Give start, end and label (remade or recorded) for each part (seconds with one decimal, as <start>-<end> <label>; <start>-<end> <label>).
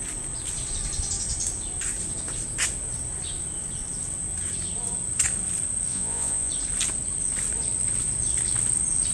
0.0-5.9 recorded; 5.9-6.5 remade; 6.5-9.1 recorded